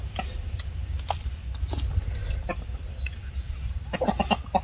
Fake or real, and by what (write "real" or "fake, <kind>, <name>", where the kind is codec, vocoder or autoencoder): real